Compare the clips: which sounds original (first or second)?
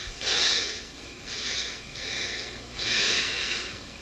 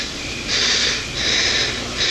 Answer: second